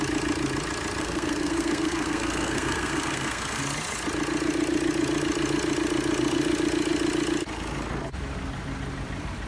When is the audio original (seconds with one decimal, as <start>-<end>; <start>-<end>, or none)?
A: 0.0-1.0; 3.6-9.5